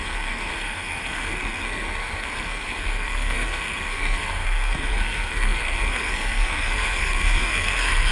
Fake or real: fake